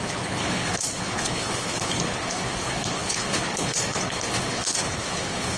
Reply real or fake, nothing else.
fake